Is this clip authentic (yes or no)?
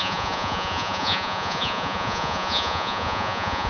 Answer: no